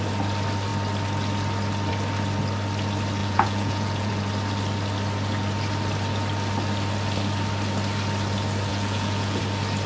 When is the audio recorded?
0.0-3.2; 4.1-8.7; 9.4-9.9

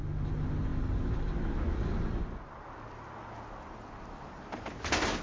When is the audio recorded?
0.0-5.2

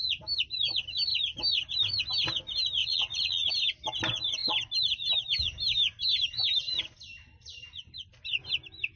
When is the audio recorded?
0.0-2.8; 3.5-9.0

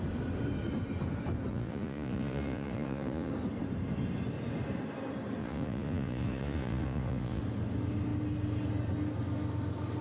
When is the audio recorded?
0.0-1.5; 3.3-5.4; 7.4-10.0

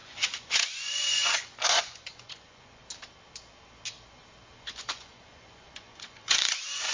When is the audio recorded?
2.8-4.6

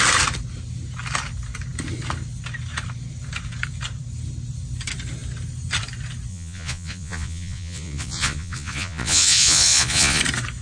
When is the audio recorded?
0.0-6.3; 10.2-10.6